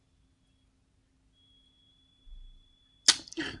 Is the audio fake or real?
real